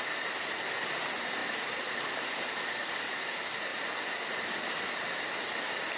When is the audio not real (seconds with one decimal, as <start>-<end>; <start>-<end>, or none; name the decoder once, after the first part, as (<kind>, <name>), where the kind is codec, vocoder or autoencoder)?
none

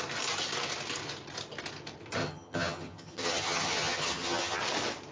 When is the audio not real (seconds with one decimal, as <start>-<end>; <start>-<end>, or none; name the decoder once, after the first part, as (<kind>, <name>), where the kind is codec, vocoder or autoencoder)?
2.2-4.6 (vocoder, HiFi-GAN)

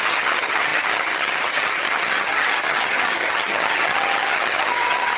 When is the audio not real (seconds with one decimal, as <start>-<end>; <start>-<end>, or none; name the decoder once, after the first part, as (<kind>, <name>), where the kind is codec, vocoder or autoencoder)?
0.0-5.2 (vocoder, HiFi-GAN)

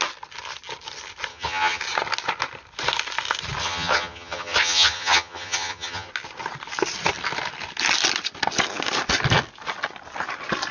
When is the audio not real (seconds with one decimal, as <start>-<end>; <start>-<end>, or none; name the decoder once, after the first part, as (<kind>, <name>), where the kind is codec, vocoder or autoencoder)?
1.3-1.8 (vocoder, HiFi-GAN); 3.6-6.1

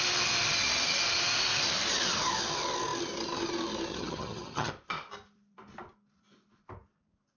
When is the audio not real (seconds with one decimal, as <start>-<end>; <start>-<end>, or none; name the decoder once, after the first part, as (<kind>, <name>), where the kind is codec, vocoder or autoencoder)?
3.9-4.7 (vocoder, HiFi-GAN)

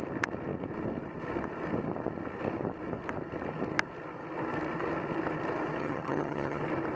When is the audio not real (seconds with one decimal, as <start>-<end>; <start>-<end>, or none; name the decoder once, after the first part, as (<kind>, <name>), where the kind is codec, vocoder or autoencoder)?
5.8-6.6 (vocoder, HiFi-GAN)

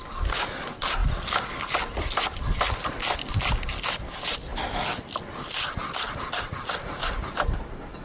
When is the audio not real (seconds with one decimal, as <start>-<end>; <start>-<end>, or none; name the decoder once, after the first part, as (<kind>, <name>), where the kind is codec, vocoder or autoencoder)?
none

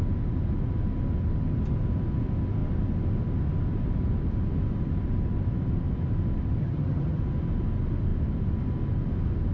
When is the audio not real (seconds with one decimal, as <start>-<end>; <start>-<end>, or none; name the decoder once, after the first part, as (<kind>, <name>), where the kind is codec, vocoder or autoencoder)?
6.6-7.2 (vocoder, HiFi-GAN)